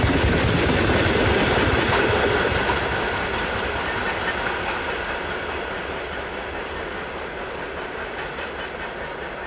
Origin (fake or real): real